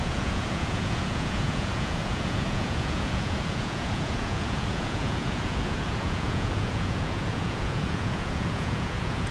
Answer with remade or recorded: remade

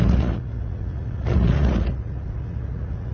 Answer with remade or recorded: remade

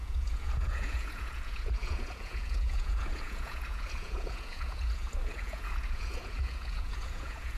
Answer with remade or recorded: remade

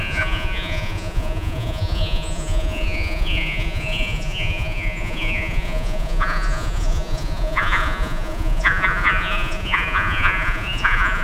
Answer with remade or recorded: remade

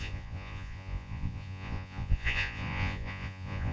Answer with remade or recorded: remade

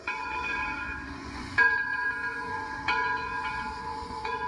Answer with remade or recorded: remade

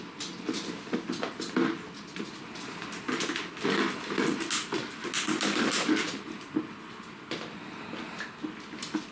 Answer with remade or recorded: recorded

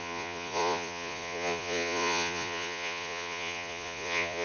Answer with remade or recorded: remade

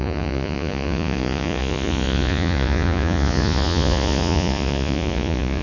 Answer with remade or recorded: remade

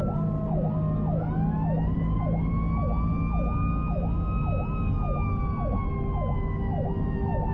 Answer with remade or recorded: recorded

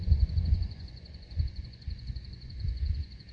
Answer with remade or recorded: remade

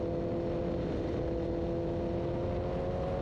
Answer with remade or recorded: recorded